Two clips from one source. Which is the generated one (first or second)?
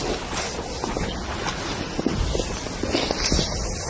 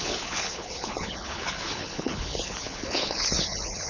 second